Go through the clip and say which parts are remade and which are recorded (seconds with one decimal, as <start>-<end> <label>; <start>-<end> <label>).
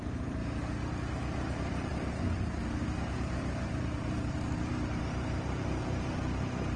0.0-0.4 remade; 0.4-1.5 recorded; 1.5-1.9 remade; 1.9-2.5 recorded; 2.5-6.8 remade